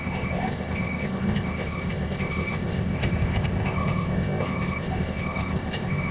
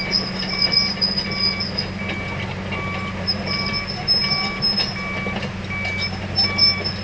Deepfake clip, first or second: first